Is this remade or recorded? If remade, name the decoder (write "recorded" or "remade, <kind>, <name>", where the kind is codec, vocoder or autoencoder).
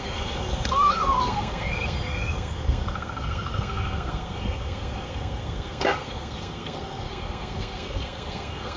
remade, codec, SNAC